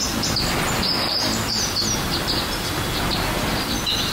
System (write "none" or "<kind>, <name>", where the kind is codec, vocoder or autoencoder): none